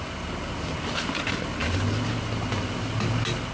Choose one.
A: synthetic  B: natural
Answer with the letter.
B